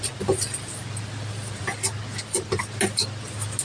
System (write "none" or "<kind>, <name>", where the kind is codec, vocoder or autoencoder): none